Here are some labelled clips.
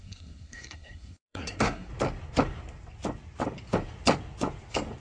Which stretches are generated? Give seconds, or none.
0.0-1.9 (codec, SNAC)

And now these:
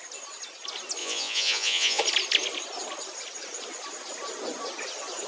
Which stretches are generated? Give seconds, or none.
1.0-2.0 (vocoder, Vocos)

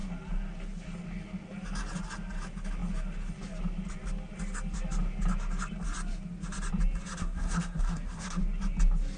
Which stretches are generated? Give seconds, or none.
7.2-8.4 (codec, SNAC)

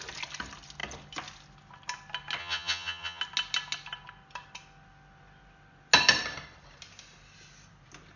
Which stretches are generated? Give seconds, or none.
2.4-3.2 (vocoder, HiFi-GAN)

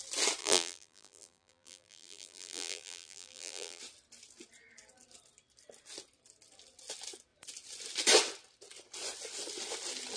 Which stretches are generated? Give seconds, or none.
0.4-3.8 (vocoder, BigVGAN v2)

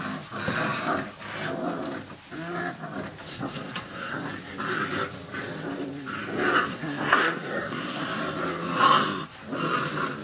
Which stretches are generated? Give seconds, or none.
3.3-4.3 (codec, SNAC); 6.7-8.0

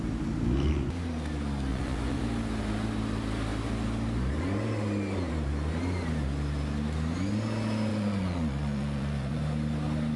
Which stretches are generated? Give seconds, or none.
1.7-2.2 (vocoder, Vocos); 7.9-9.4

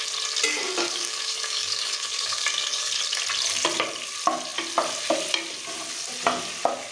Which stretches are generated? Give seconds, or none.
0.5-3.0 (codec, DAC)